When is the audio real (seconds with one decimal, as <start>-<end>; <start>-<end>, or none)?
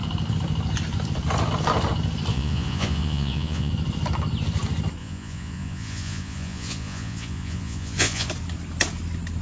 0.0-2.3; 3.7-5.0; 8.3-9.4